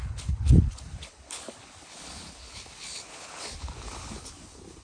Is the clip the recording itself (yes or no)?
no